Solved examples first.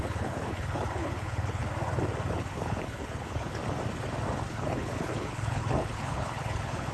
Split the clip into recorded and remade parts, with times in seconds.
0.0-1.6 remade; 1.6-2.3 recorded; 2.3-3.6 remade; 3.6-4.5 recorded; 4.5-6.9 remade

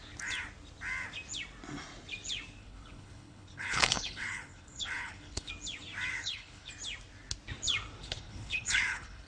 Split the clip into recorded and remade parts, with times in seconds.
0.0-2.6 recorded; 2.6-5.5 remade; 5.5-6.1 recorded; 6.1-6.7 remade; 6.7-8.0 recorded; 8.0-9.3 remade

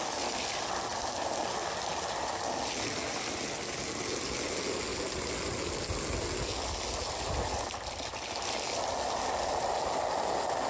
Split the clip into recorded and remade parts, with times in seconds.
0.0-10.7 recorded

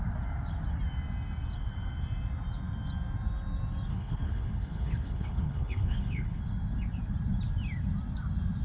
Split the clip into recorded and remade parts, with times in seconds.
0.0-3.9 recorded; 3.9-6.4 remade; 6.4-8.6 recorded